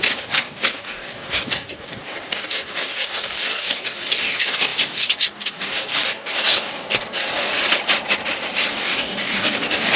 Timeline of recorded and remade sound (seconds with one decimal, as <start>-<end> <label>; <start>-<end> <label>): 0.0-7.5 remade; 7.5-8.7 recorded; 8.7-10.0 remade